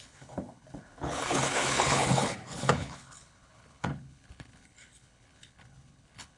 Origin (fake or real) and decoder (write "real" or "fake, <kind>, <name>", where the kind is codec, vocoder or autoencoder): fake, codec, HILCodec